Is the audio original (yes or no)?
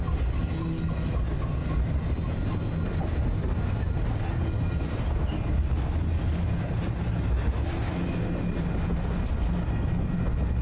yes